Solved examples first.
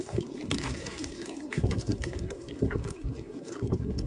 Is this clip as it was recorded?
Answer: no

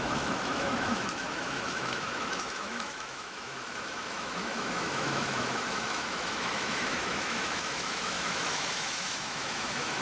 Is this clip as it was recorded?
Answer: no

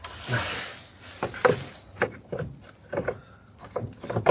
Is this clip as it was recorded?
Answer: yes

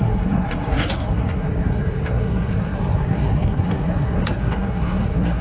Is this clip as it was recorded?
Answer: no